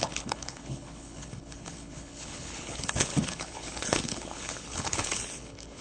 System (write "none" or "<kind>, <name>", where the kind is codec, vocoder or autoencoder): codec, HILCodec